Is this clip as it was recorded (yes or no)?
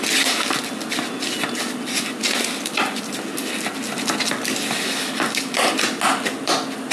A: yes